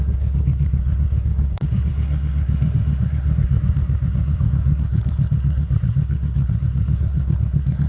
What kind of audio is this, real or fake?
fake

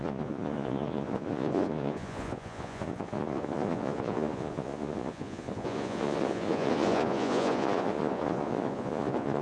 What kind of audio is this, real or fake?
fake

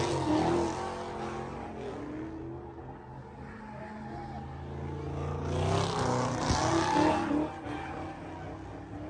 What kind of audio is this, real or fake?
real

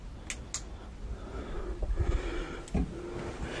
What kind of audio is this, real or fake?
real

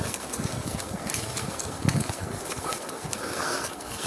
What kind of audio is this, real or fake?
fake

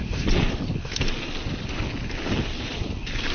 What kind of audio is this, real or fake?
real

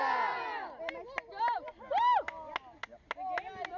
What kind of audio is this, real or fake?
real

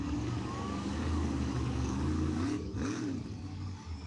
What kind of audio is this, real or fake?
fake